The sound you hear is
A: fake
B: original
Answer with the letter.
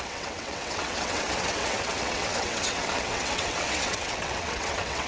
A